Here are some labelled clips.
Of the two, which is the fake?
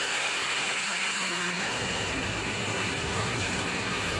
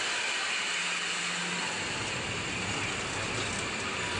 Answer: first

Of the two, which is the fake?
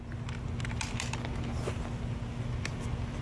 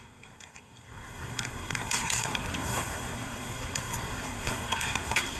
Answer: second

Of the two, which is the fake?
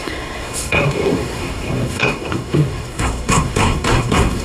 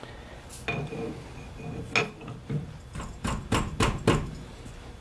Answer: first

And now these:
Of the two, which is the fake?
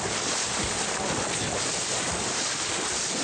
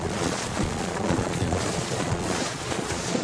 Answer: second